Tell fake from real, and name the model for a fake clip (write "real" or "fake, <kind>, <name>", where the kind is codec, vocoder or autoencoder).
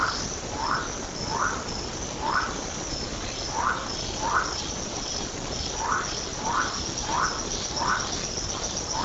real